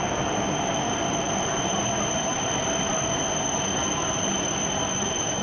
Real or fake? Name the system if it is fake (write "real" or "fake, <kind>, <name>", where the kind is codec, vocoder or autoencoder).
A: fake, vocoder, BigVGAN v2